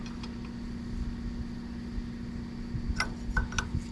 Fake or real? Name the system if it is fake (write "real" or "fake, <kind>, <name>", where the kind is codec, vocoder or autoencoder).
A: real